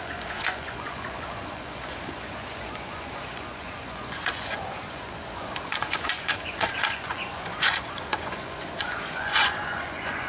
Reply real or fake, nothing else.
fake